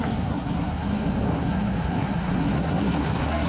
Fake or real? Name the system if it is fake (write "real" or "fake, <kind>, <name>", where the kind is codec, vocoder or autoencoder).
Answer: fake, codec, SNAC